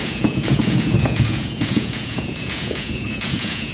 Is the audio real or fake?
fake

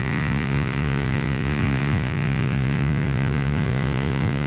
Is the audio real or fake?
fake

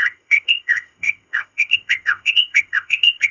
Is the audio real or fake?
fake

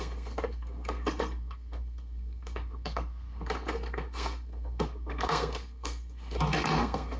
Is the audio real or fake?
fake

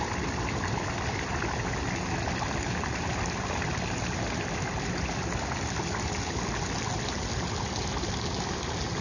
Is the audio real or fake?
real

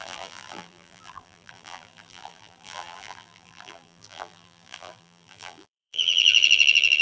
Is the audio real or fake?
fake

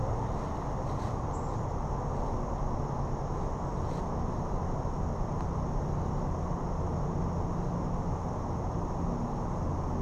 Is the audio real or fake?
real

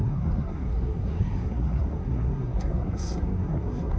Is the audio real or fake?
fake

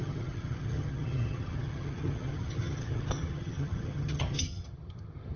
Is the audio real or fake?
fake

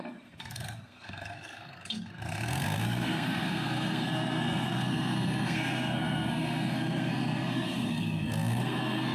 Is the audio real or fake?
fake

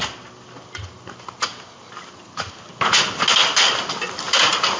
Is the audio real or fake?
real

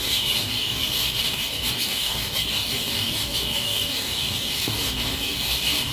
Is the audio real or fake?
fake